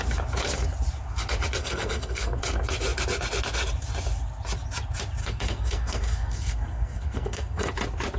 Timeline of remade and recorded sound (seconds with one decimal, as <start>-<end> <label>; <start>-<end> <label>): 0.0-1.6 recorded; 1.6-2.4 remade; 2.4-5.2 recorded; 5.2-7.7 remade; 7.7-8.2 recorded

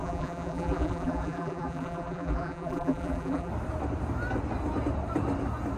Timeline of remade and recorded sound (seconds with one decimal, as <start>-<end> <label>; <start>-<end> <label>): 0.0-3.5 remade; 3.5-5.8 recorded